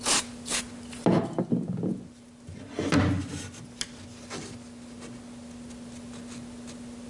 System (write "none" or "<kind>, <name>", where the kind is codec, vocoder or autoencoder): none